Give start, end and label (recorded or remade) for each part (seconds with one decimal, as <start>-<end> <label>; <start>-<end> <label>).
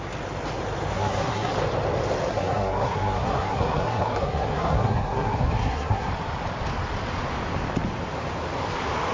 0.0-0.9 recorded; 0.9-1.5 remade; 1.5-2.3 recorded; 2.3-6.1 remade; 6.1-9.1 recorded